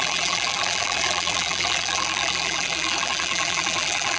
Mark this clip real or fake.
fake